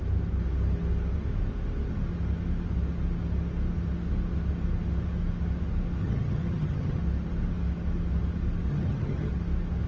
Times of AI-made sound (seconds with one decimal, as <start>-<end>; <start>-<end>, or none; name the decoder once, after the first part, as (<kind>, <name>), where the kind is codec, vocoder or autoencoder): 6.0-7.0 (vocoder, HiFi-GAN); 8.7-9.3